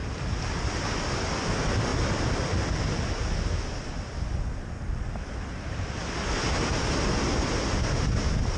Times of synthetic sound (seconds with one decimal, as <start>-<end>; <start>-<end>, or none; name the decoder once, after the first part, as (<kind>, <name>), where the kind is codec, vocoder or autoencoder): none